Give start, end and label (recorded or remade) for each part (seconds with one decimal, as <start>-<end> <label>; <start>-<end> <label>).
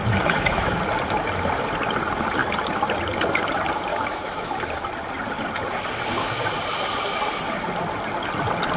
0.0-0.8 remade; 0.8-3.9 recorded; 3.9-4.5 remade; 4.5-8.8 recorded